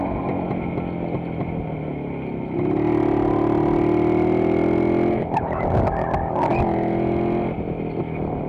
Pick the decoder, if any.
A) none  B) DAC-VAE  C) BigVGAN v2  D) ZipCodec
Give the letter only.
A